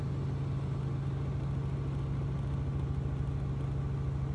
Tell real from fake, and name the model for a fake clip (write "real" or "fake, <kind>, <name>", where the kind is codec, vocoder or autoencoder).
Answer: real